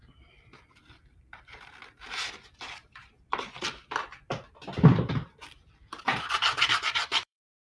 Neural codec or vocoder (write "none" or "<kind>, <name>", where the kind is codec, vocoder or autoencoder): vocoder, BigVGAN v2